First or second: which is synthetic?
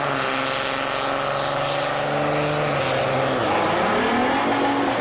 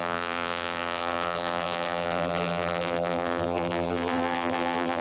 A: second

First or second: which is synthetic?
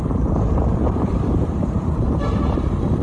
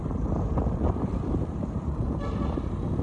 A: first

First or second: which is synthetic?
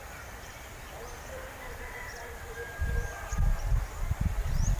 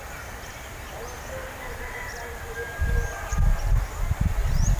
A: first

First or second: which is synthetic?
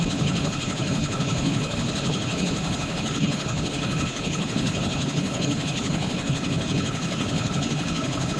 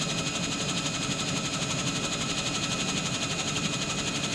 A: first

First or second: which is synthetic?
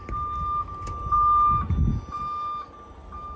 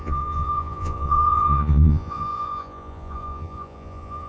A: second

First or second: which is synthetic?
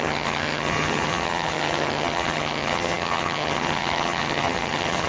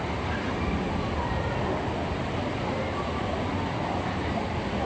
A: first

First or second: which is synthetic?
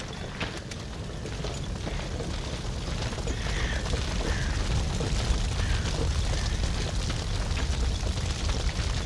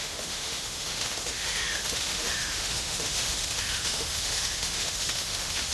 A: second